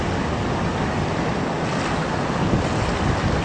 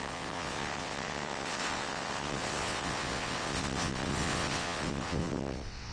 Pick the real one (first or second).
first